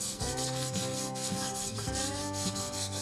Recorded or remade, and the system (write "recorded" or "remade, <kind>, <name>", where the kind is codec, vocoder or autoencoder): remade, codec, SNAC